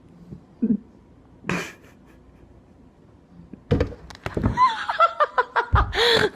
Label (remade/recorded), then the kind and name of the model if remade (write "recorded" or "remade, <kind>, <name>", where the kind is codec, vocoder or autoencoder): recorded